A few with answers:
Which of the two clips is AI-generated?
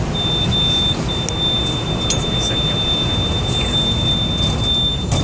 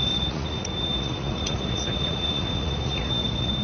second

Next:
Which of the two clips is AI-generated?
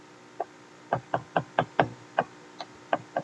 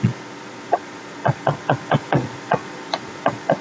second